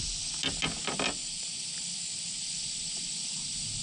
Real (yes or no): yes